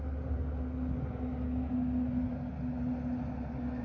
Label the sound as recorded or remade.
recorded